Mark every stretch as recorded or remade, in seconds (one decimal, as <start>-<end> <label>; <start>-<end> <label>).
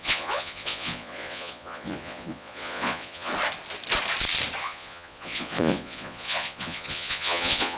0.0-3.3 remade; 3.3-4.6 recorded; 4.6-7.8 remade